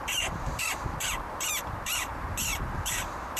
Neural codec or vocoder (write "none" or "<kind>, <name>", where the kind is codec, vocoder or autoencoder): vocoder, BigVGAN v2